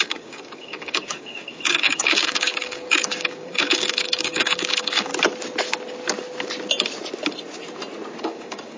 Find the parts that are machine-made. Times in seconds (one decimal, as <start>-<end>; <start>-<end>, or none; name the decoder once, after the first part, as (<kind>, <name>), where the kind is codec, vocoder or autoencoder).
0.0-5.1 (codec, DAC); 8.2-8.8